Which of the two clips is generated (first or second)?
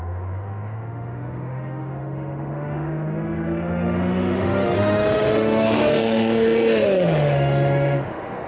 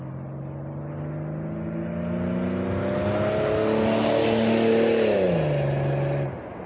first